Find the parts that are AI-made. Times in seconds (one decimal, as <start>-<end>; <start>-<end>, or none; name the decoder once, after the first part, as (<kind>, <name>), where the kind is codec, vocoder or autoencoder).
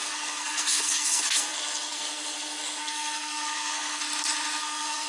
0.0-4.0 (codec, SNAC); 4.6-5.1